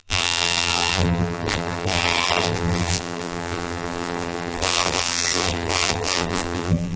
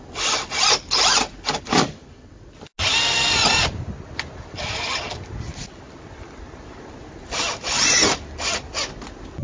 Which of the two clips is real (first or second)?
second